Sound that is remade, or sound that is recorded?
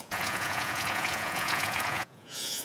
remade